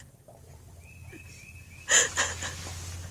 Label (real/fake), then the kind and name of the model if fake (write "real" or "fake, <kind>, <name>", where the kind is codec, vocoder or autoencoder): real